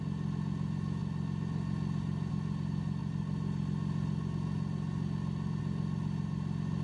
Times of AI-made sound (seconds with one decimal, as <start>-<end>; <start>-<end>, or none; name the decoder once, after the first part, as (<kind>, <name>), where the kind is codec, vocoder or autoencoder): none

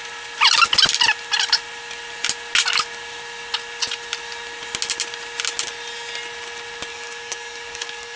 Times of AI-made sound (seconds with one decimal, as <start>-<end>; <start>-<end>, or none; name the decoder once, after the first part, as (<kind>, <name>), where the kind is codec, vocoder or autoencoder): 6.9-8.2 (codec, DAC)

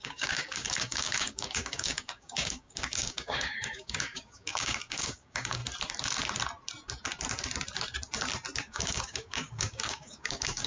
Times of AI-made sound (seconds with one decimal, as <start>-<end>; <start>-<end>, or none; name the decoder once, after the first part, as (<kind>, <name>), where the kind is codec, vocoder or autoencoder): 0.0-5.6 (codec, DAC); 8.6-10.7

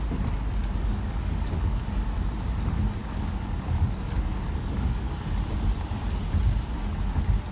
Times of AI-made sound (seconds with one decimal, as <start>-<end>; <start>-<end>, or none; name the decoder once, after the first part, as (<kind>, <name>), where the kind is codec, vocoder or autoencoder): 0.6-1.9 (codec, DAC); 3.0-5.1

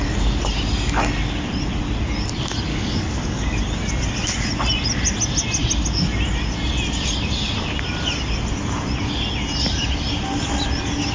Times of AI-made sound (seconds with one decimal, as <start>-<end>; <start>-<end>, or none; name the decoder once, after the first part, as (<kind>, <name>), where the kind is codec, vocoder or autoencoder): 2.7-3.6 (codec, DAC)